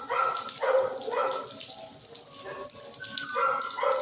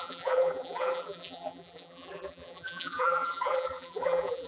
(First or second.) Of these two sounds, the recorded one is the first